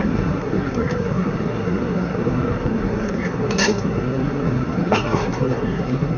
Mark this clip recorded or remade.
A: remade